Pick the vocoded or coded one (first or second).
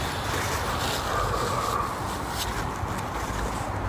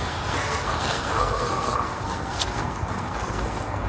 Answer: second